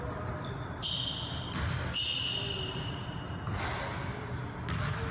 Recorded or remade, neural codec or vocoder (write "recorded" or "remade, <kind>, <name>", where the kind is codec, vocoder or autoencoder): recorded